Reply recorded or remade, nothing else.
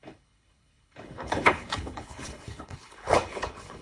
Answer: remade